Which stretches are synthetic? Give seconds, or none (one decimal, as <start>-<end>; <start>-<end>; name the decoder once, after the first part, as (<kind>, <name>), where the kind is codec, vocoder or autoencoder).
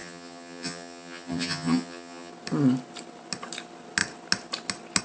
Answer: 0.0-2.3 (vocoder, HiFi-GAN)